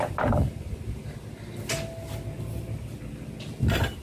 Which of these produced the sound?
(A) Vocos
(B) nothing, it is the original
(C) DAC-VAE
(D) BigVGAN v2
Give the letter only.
B